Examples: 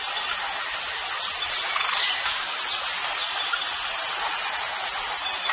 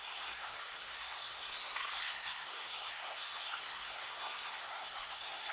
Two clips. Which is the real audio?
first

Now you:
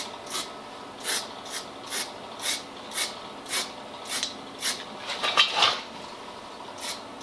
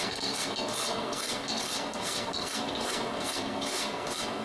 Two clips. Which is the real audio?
first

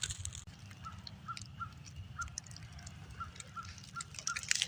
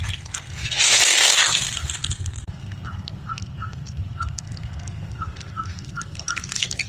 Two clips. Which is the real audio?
first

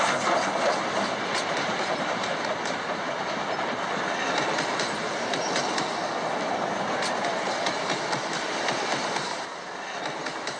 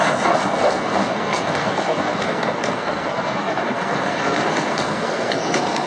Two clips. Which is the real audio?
first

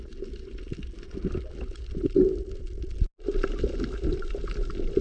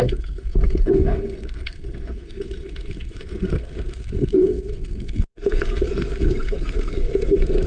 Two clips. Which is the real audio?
first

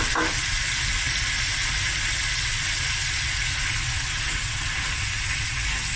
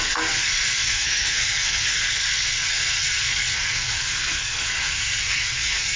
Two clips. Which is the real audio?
first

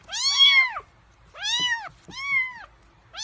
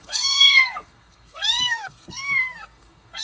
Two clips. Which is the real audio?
first